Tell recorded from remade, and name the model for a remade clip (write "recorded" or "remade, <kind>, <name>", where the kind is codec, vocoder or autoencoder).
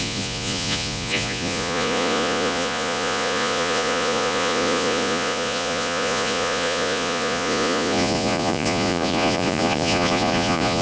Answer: remade, vocoder, Vocos